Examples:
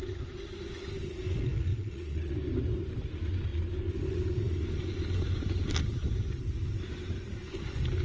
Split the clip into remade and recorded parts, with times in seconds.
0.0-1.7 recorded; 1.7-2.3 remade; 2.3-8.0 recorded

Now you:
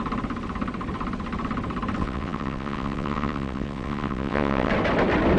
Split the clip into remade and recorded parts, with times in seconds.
0.0-2.0 recorded; 2.0-4.7 remade; 4.7-5.4 recorded